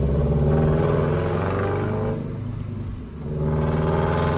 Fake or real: real